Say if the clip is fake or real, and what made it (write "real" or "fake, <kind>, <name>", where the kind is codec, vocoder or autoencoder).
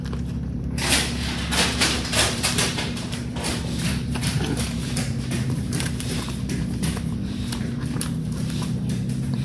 fake, vocoder, BigVGAN v2